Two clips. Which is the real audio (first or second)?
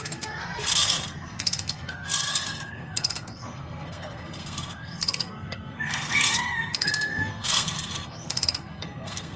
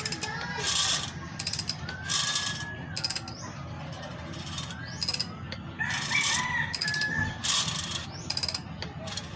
second